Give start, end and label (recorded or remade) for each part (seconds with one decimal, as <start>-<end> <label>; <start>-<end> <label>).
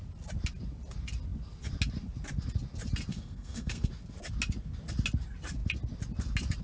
0.0-3.1 recorded; 3.1-3.9 remade; 3.9-6.6 recorded